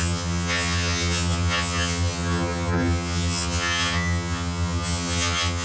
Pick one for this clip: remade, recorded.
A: remade